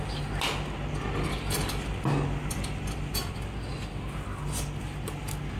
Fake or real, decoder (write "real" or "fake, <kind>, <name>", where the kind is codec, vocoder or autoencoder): real